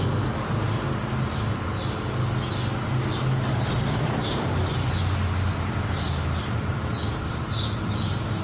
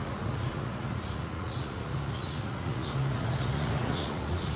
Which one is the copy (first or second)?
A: second